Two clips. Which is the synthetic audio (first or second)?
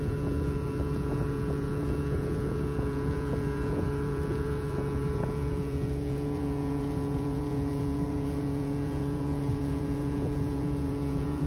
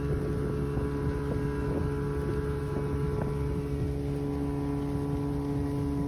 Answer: first